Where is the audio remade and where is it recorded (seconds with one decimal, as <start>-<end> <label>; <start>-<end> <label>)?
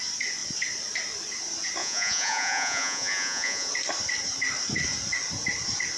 0.0-1.8 recorded; 1.8-3.7 remade; 3.7-6.0 recorded